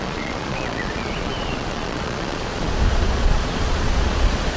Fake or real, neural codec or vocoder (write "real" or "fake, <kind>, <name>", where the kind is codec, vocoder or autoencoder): fake, vocoder, Vocos